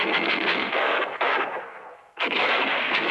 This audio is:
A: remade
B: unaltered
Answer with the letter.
A